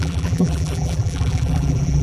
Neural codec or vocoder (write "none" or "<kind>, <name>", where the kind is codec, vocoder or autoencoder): vocoder, BigVGAN v2